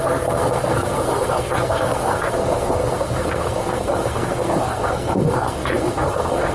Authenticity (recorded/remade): remade